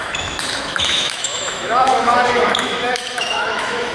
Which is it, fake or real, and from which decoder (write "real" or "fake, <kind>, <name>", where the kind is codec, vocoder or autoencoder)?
fake, autoencoder, DAC-VAE